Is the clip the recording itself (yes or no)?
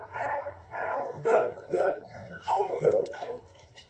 no